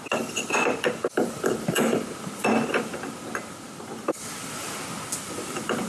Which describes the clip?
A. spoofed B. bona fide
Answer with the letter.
A